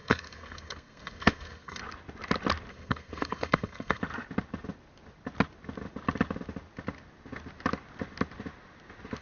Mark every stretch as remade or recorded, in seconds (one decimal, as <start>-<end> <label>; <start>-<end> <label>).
0.0-1.8 remade; 1.8-2.7 recorded; 2.7-4.0 remade; 4.0-9.2 recorded